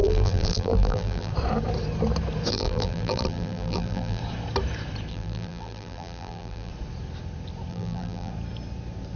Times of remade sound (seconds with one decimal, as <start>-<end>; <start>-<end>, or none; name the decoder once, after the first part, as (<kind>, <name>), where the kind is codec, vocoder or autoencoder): 0.0-1.3 (vocoder, BigVGAN v2); 2.5-4.2; 5.1-6.7; 7.7-8.3